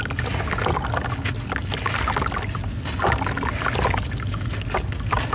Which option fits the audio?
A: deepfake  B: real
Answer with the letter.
B